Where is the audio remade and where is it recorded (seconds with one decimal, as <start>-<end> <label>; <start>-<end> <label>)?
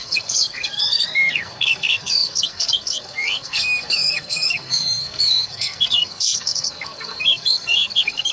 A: 0.0-8.3 remade